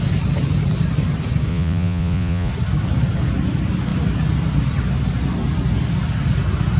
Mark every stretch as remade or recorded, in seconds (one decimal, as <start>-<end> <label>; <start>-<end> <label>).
0.0-1.5 recorded; 1.5-2.5 remade; 2.5-6.8 recorded